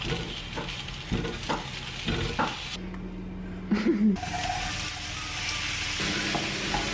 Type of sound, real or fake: real